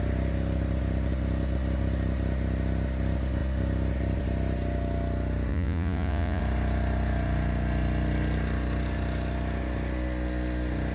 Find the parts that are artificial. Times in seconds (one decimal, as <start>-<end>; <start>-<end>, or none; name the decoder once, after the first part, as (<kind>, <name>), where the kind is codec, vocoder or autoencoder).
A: 5.5-6.4 (vocoder, Vocos)